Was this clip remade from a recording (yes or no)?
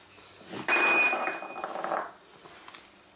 no